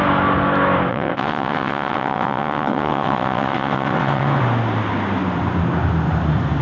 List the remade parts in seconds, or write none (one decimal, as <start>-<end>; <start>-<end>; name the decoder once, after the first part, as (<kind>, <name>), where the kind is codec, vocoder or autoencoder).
0.9-4.4 (vocoder, WaveNeXt)